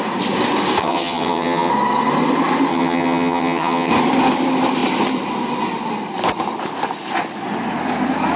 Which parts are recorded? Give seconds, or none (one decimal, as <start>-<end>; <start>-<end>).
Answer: 0.0-0.8; 1.7-2.7; 3.9-8.4